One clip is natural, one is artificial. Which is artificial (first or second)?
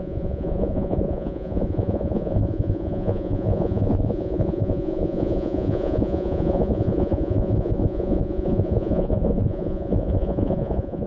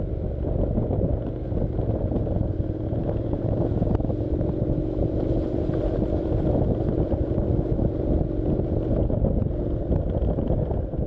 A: first